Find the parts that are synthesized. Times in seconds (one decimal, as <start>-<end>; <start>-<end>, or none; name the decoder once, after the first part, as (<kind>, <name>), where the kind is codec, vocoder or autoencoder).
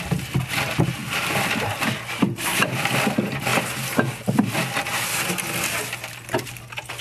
1.0-2.8 (vocoder, BigVGAN v2)